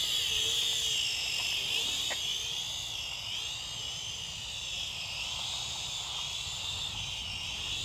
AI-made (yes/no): no